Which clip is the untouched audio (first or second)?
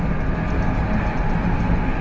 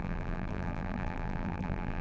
first